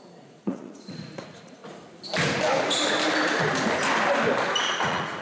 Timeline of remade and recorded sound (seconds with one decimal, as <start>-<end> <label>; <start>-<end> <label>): 0.0-1.6 remade; 1.6-4.6 recorded; 4.6-5.2 remade